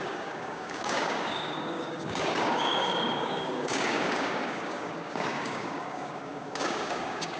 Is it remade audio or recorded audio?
remade